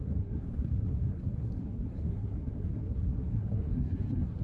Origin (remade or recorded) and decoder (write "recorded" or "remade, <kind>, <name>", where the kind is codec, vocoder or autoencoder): remade, codec, SNAC